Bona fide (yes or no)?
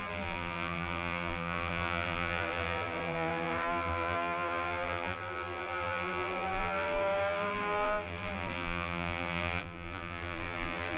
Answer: no